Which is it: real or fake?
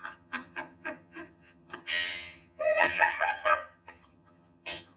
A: fake